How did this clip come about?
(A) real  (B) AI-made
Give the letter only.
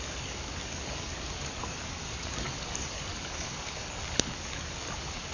B